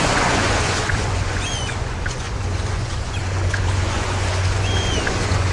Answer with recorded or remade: remade